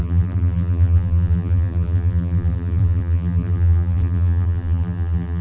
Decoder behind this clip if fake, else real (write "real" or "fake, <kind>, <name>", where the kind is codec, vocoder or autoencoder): fake, vocoder, BigVGAN v2